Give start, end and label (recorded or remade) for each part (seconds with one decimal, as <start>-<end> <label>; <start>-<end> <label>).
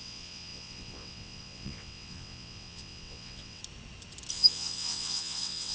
0.0-3.6 remade; 3.6-4.3 recorded; 4.3-5.7 remade